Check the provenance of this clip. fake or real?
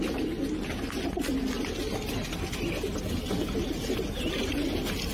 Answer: real